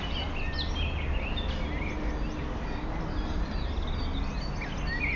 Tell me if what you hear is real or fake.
real